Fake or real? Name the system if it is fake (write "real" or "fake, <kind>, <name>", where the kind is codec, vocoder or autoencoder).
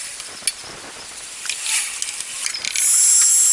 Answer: real